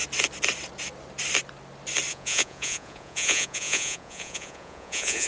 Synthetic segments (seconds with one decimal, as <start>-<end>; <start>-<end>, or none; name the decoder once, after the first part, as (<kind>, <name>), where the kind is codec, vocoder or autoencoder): 2.1-5.3 (vocoder, Vocos)